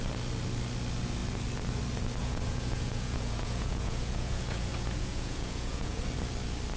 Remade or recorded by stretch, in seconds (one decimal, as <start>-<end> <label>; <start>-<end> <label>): 0.0-2.2 recorded; 2.2-6.0 remade; 6.0-6.8 recorded